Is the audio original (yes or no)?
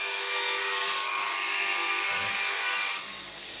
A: no